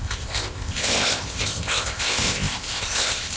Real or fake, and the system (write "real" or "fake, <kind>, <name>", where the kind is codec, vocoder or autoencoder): fake, codec, ZipCodec